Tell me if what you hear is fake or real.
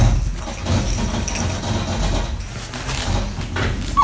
real